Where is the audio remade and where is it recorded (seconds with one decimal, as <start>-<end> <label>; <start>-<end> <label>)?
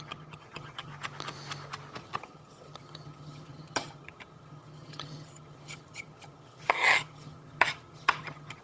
0.0-0.9 remade; 0.9-2.0 recorded; 2.0-8.6 remade